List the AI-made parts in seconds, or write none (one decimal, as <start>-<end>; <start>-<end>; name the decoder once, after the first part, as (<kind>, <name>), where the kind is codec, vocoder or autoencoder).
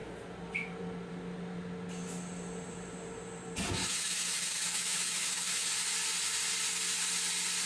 3.8-5.7 (autoencoder, DAC-VAE)